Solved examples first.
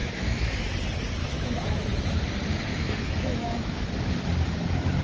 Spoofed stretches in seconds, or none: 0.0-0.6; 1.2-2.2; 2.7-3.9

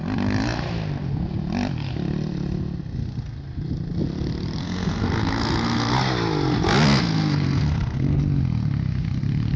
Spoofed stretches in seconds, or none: 4.6-5.9; 7.0-8.2

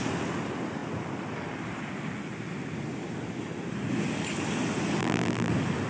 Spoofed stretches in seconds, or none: 5.0-5.5

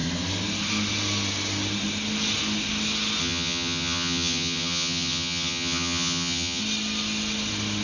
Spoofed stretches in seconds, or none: 3.2-6.6

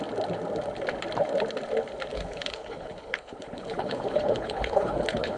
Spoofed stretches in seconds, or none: 2.1-5.4

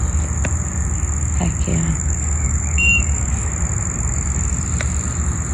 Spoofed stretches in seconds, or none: 1.7-3.5

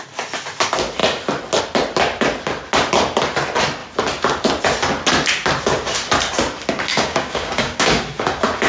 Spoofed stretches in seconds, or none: 6.9-8.0

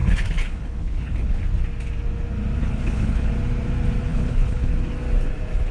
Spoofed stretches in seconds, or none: 0.0-1.4; 2.6-3.3; 4.1-4.7